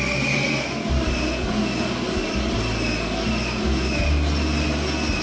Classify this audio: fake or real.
real